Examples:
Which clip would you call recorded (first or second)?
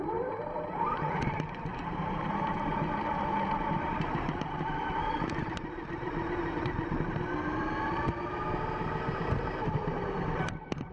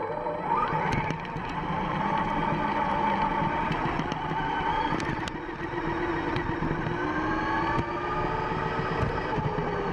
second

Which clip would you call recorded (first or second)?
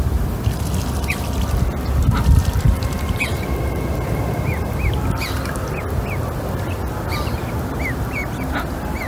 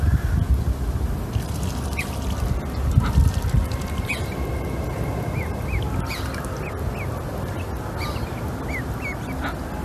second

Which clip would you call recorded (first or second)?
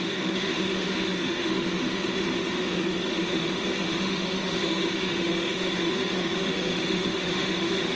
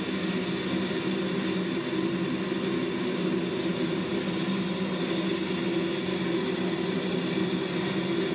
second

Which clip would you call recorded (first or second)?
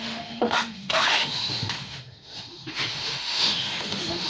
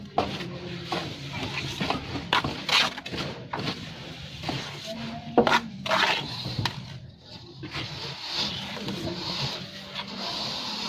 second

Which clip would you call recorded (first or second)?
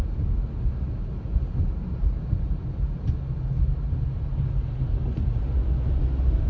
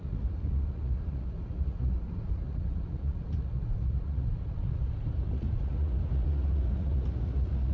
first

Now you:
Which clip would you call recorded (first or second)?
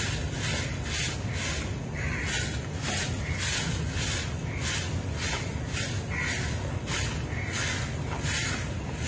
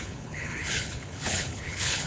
first